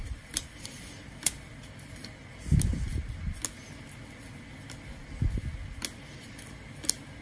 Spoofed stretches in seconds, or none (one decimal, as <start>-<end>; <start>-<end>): 0.0-2.3